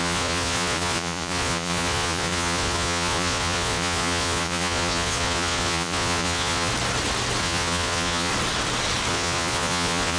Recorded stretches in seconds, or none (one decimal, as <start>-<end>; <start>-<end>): 6.7-7.4; 8.3-9.1